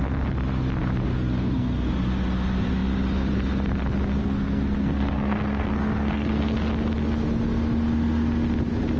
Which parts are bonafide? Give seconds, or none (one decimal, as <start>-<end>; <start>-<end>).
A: 0.0-1.1; 1.9-4.2; 6.4-9.0